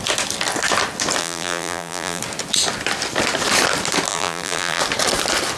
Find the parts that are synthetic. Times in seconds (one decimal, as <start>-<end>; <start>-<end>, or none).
1.2-2.2; 4.1-4.8